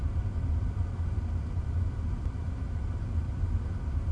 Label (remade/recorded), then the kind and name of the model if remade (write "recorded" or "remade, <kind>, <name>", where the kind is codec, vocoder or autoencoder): recorded